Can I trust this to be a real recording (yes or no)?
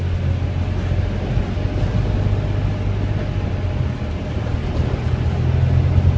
yes